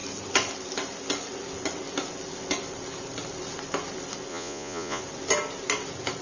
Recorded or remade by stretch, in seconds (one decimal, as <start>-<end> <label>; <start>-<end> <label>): 0.0-4.3 recorded; 4.3-5.0 remade; 5.0-6.2 recorded